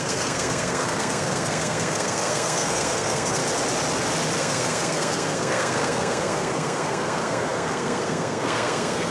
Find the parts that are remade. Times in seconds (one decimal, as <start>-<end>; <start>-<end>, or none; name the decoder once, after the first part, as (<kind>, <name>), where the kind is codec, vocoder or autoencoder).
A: 0.0-3.4 (codec, SNAC); 4.4-9.1